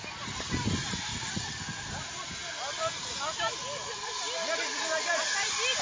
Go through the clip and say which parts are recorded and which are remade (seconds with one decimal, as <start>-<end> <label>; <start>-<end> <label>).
0.0-5.8 recorded